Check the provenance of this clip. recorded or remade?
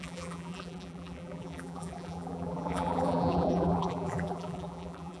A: remade